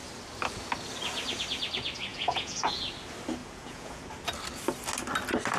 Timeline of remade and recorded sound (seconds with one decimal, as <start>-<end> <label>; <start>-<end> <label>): 0.0-2.1 recorded; 2.1-2.8 remade; 2.8-3.4 recorded; 3.4-4.0 remade; 4.0-5.6 recorded